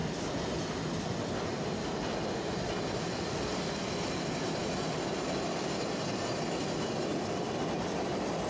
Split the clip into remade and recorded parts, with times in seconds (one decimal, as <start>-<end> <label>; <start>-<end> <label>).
0.0-8.5 recorded